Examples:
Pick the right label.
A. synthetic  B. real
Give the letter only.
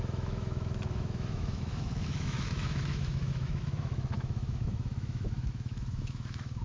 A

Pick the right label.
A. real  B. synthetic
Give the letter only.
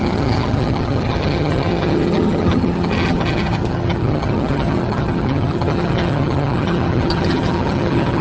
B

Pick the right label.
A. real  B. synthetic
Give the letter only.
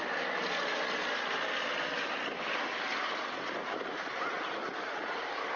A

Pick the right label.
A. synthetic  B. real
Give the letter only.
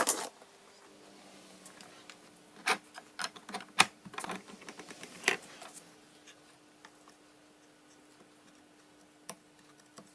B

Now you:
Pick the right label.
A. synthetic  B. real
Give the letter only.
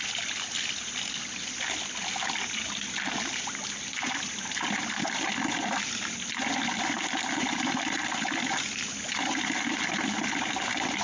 B